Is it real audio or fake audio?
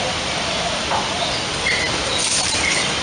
real